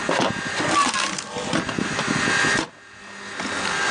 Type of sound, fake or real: real